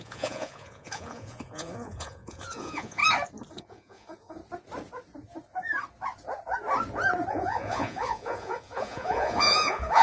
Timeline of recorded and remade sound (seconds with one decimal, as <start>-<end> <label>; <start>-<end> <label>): 0.0-3.0 remade; 3.0-3.5 recorded; 3.5-4.4 remade; 4.4-7.3 recorded; 7.3-10.0 remade